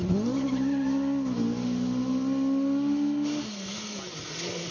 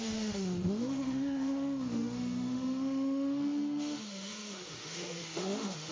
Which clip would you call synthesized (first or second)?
second